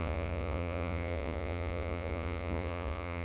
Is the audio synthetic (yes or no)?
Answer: yes